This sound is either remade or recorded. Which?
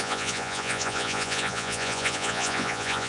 remade